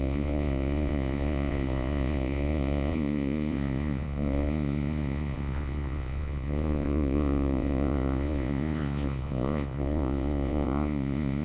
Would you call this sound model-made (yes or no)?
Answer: yes